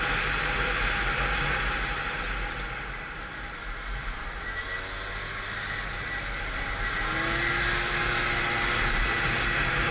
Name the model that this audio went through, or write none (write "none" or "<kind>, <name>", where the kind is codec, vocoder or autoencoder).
none